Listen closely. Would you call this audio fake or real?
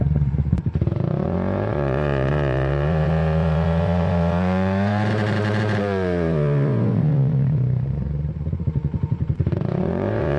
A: fake